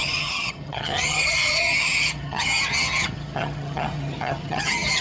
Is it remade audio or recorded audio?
remade